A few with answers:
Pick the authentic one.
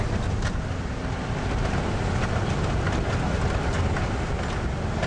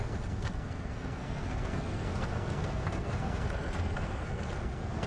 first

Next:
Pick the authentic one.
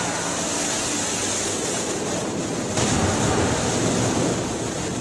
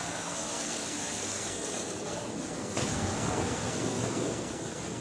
first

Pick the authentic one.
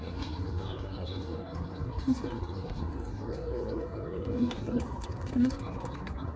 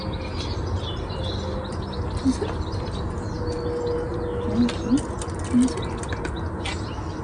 second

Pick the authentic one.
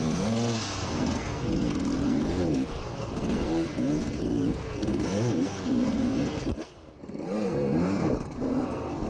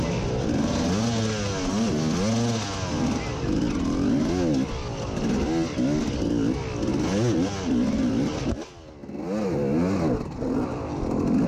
second